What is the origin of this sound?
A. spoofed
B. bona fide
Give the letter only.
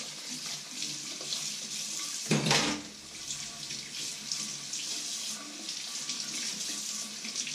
B